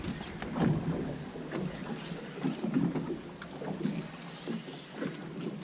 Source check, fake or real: real